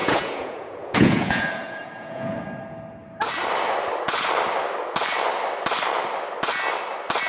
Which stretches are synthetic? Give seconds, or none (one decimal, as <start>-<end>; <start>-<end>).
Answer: 0.0-2.4